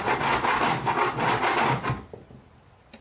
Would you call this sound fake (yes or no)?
no